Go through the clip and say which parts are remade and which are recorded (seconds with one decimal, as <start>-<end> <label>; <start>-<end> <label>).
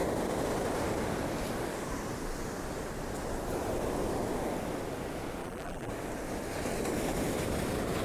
0.0-5.4 recorded; 5.4-5.9 remade; 5.9-8.0 recorded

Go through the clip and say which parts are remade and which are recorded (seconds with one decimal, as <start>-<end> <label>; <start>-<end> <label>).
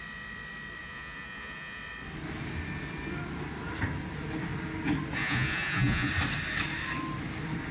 0.0-0.8 recorded; 0.8-1.8 remade; 1.8-5.2 recorded; 5.2-6.1 remade; 6.1-7.7 recorded